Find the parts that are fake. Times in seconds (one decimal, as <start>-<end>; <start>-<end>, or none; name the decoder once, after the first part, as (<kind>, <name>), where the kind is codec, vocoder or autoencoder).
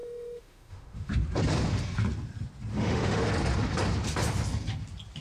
0.0-1.1 (autoencoder, DAC-VAE); 2.7-3.3